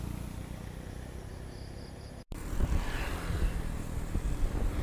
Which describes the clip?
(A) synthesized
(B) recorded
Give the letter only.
B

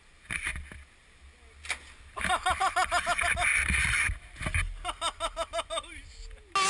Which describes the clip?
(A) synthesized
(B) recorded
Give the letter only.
B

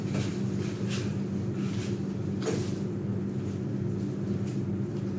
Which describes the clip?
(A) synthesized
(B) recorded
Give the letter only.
B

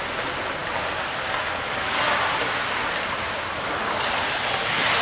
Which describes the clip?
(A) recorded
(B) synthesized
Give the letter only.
A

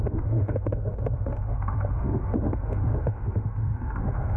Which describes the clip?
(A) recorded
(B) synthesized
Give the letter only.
B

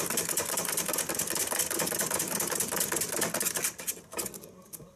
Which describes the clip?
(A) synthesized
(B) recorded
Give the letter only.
B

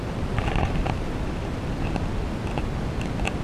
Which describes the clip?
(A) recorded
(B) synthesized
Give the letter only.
A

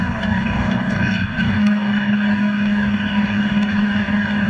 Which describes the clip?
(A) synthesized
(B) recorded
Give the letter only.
A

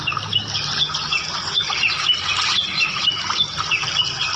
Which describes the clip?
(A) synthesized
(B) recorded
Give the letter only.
B